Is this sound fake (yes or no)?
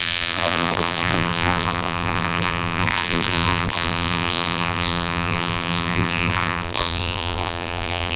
yes